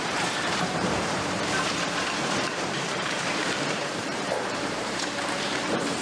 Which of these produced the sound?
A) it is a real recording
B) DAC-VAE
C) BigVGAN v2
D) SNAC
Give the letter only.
C